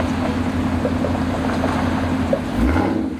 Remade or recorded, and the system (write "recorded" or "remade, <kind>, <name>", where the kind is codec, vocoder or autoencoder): recorded